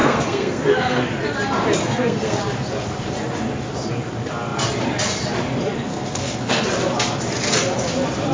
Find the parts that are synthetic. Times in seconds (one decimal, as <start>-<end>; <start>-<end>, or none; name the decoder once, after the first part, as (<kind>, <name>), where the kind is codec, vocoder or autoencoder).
0.0-1.1 (codec, SNAC); 1.8-2.4; 5.9-6.6